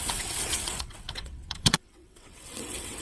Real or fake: fake